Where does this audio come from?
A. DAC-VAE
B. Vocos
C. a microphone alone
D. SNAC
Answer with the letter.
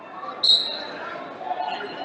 C